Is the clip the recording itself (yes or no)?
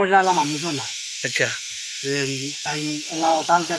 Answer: no